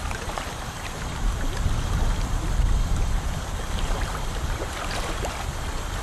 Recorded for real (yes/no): yes